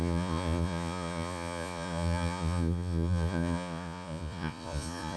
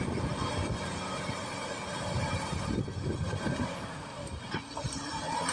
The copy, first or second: first